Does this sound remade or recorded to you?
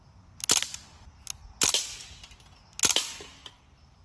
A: recorded